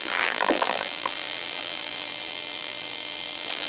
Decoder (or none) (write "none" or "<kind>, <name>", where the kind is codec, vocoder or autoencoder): vocoder, BigVGAN v2